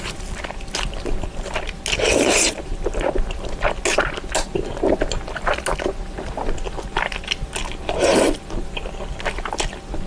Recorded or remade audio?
recorded